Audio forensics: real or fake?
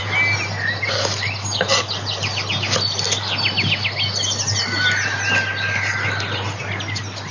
real